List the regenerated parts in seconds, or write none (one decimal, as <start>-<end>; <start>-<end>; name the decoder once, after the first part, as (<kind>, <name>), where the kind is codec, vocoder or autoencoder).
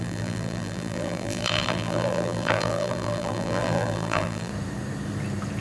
0.0-4.5 (vocoder, BigVGAN v2)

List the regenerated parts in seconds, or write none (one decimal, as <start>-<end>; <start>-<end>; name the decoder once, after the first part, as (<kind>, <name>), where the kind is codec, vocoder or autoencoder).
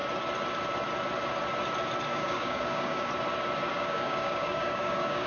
2.1-3.1 (codec, DAC); 3.7-5.3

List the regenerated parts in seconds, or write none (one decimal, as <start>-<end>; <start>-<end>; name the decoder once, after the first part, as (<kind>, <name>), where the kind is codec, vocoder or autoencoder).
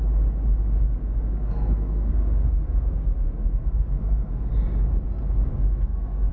1.0-4.5 (codec, SNAC); 5.5-6.3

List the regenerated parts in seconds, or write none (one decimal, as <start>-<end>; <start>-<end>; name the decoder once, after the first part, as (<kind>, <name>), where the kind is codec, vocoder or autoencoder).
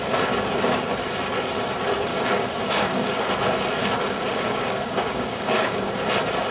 2.1-3.3 (codec, DAC); 3.8-5.9